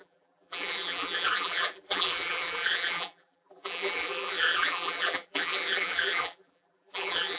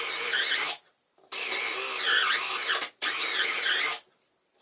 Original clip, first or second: second